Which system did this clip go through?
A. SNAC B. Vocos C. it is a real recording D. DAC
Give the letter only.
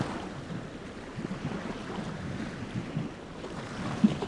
C